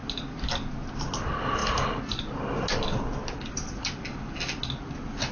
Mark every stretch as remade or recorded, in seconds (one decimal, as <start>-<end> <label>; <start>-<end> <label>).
0.0-5.3 recorded